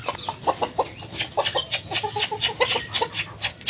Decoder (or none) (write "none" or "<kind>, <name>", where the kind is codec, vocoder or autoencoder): none